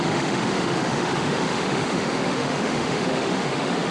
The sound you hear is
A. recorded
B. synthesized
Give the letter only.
B